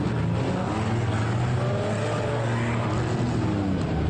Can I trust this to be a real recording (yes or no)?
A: yes